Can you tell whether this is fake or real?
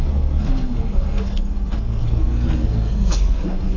fake